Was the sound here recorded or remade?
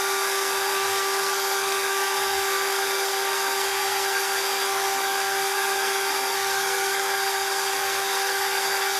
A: remade